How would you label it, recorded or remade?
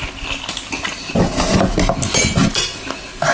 recorded